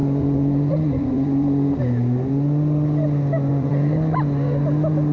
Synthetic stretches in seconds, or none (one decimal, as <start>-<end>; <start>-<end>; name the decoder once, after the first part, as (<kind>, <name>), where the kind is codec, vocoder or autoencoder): 0.0-1.8 (vocoder, Vocos); 3.5-4.2